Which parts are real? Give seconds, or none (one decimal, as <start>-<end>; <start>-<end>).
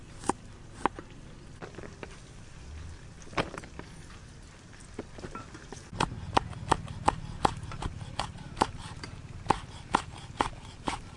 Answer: 0.0-5.1